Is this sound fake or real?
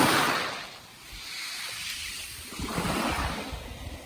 real